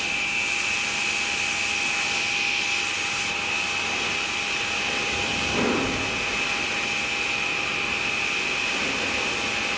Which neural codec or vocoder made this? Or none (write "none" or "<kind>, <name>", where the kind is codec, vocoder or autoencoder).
none